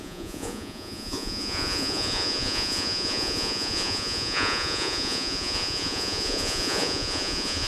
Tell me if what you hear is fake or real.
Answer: fake